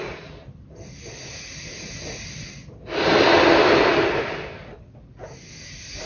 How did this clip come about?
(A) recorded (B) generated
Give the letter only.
A